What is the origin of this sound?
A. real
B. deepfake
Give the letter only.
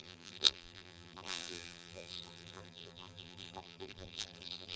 B